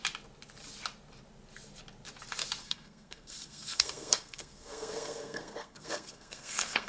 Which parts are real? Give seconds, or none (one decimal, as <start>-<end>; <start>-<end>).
0.0-2.6